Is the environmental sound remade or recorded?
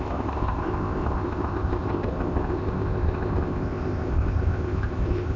remade